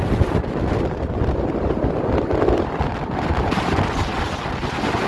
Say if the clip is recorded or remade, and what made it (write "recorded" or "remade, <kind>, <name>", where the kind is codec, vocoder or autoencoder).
recorded